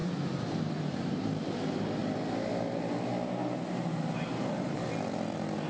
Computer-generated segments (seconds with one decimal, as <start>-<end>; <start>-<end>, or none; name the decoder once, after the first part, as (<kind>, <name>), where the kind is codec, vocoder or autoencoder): 0.0-1.5 (vocoder, BigVGAN v2); 4.3-4.9